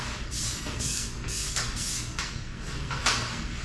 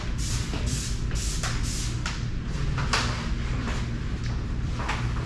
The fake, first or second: first